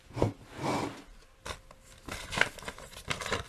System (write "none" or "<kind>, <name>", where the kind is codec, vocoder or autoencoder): none